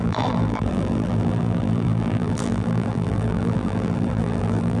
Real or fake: fake